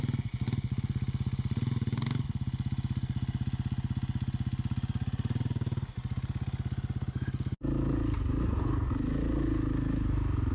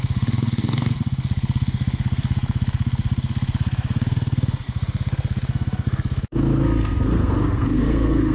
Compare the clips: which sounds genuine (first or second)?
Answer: first